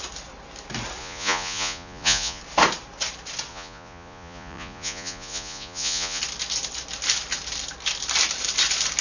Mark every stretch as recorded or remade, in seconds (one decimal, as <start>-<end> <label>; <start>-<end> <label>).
0.0-1.0 recorded; 1.0-2.4 remade; 2.4-3.5 recorded; 3.5-6.2 remade; 6.2-9.0 recorded